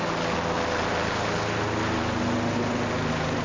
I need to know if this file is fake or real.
real